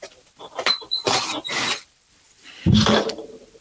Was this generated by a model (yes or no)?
yes